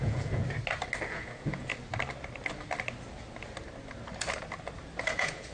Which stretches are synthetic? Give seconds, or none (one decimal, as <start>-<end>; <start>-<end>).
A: 0.0-0.4; 1.1-1.7; 5.0-5.5